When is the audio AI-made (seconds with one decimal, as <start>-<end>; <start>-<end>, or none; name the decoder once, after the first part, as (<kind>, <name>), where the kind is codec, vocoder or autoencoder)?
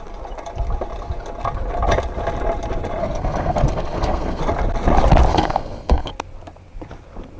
3.0-4.4 (codec, SNAC); 5.3-6.1